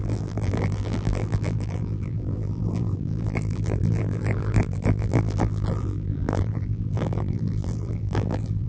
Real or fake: fake